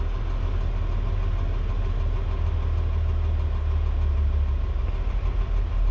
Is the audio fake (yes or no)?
no